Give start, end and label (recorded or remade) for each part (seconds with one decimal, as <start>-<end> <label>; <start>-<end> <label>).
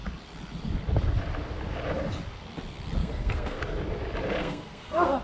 0.0-3.0 recorded; 3.0-3.6 remade; 3.6-4.4 recorded; 4.4-5.2 remade